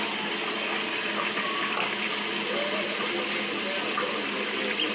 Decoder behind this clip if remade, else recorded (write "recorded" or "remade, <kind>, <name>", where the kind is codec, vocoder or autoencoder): recorded